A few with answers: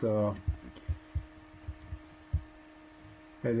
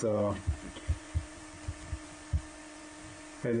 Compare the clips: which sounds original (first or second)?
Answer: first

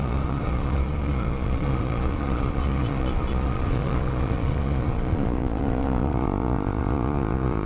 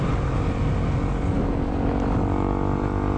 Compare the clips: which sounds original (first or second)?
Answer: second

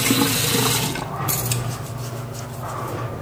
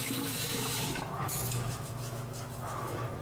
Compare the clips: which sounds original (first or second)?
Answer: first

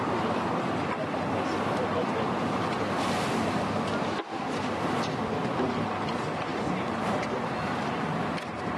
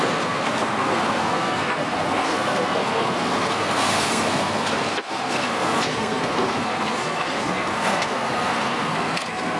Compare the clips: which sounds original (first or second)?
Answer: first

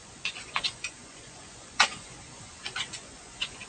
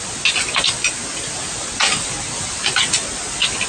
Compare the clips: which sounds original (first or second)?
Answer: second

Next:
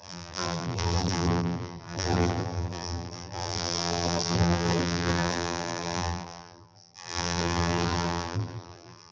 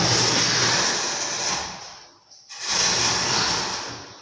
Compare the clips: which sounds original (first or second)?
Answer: second